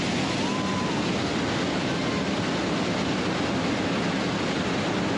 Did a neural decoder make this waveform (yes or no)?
no